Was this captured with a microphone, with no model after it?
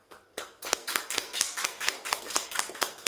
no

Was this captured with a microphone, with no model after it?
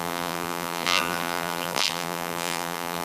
no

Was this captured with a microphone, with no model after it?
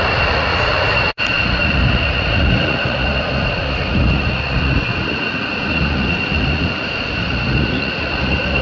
no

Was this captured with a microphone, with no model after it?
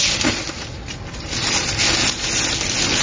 yes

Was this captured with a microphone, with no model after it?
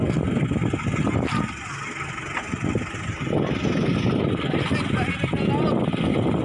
yes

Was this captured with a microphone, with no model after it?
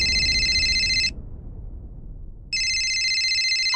yes